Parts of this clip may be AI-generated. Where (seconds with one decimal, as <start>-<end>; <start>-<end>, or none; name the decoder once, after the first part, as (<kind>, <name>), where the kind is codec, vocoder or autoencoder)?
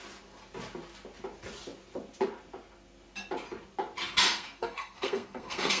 4.3-5.8 (codec, SNAC)